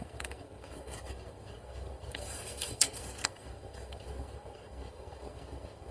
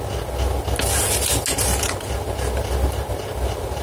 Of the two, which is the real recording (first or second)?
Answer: second